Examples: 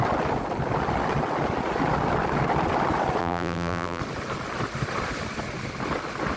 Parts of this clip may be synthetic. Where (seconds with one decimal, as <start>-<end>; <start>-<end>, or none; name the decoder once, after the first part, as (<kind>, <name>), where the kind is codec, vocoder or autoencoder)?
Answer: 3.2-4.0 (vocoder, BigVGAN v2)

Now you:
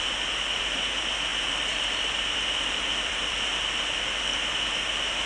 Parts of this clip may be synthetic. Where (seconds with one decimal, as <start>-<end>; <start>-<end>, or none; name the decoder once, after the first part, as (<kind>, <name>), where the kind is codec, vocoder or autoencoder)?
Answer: 1.3-4.5 (vocoder, BigVGAN v2)

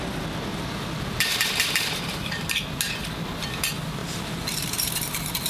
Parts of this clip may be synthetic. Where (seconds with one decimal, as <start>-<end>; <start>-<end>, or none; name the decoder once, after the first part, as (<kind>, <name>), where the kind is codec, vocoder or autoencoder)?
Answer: 0.5-2.5 (vocoder, BigVGAN v2); 4.0-5.0

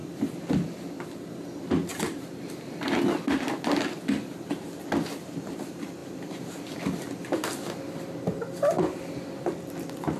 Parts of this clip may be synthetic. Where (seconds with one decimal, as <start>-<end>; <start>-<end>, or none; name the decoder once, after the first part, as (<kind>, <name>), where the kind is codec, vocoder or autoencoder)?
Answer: 0.0-1.3 (vocoder, BigVGAN v2); 1.9-2.8; 6.0-9.5

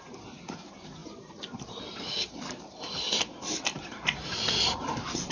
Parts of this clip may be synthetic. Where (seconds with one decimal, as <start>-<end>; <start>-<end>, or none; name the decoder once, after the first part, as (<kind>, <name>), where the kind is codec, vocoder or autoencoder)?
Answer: 0.0-5.3 (vocoder, BigVGAN v2)

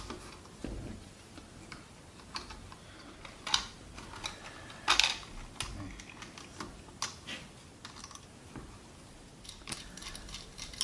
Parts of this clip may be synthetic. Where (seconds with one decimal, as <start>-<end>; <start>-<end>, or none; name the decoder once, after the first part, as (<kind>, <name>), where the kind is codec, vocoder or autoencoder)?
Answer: 0.6-3.0 (vocoder, BigVGAN v2)